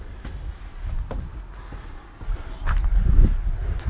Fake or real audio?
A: real